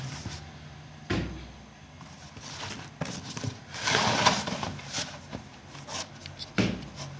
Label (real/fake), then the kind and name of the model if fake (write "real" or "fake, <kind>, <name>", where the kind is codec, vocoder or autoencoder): real